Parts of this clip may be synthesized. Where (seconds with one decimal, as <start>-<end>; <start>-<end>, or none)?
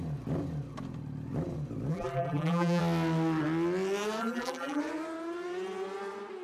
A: 1.9-2.8; 4.2-4.8